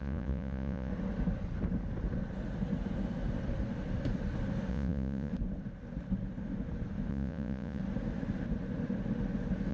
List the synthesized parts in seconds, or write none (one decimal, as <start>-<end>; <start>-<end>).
0.0-0.9; 4.7-5.3; 7.1-7.8